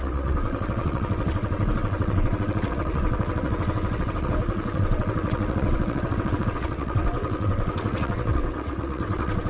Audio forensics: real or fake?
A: fake